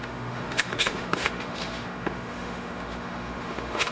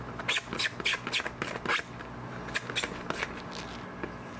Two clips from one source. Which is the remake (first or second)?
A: first